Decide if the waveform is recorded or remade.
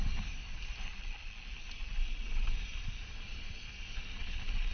recorded